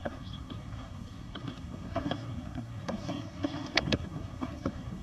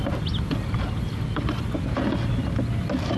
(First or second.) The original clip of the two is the second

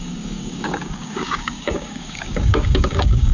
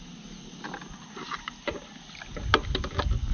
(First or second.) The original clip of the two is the second